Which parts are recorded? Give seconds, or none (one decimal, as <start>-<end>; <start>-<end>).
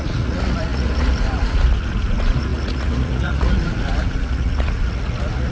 none